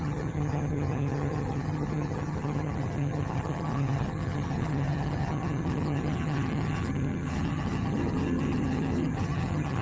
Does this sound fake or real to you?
fake